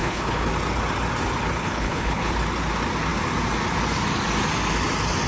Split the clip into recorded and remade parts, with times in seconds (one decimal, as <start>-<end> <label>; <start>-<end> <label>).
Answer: 0.0-0.5 remade; 0.5-1.6 recorded; 1.6-2.3 remade; 2.3-5.3 recorded